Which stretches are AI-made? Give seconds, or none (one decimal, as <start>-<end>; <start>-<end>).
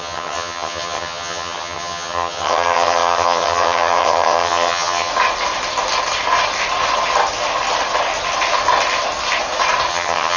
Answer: 0.0-5.1; 9.9-10.4